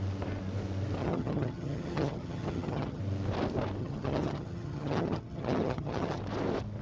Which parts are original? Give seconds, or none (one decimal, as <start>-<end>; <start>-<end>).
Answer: 0.0-1.0; 3.0-3.8; 6.2-6.8